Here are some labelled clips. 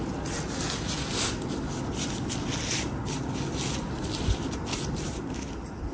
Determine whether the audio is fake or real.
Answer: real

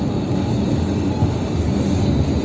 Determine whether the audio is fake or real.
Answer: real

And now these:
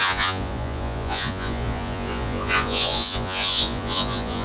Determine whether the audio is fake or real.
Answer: fake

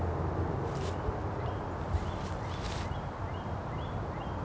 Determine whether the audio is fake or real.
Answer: real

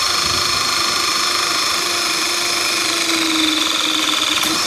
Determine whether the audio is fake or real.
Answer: real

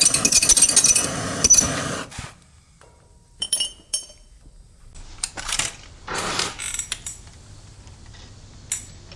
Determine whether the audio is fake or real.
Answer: real